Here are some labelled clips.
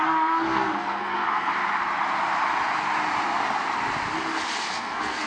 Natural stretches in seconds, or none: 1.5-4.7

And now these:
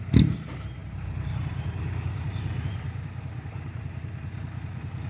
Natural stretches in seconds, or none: 0.0-0.8; 3.9-5.1